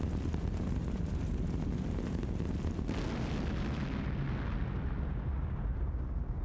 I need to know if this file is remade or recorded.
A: recorded